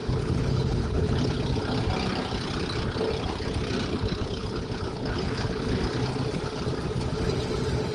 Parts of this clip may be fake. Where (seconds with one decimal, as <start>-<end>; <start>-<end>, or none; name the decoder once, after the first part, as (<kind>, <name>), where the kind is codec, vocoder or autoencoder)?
0.0-1.2 (codec, HILCodec); 3.9-5.8